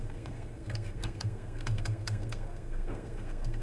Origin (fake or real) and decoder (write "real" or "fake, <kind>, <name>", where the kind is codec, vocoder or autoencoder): fake, codec, SNAC